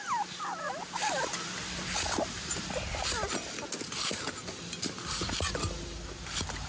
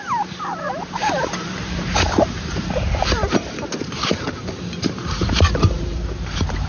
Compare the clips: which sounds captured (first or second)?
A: first